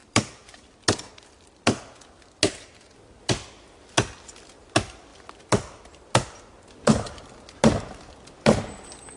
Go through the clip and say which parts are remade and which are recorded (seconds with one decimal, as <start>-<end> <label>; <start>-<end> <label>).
0.0-0.7 remade; 0.7-9.2 recorded